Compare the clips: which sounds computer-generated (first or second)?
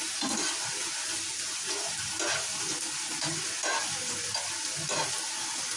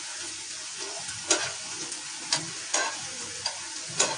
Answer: second